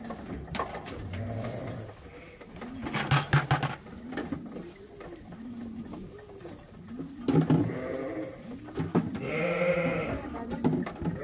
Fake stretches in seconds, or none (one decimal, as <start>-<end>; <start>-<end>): none

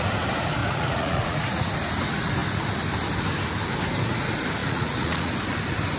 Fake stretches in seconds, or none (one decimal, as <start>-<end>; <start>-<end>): 0.6-1.7; 4.6-5.3

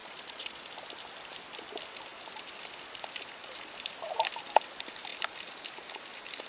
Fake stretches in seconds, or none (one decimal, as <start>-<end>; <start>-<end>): 0.0-0.6

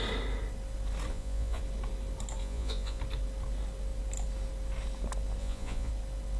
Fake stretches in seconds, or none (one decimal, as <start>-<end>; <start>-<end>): 1.1-1.6; 2.4-3.0; 5.4-5.9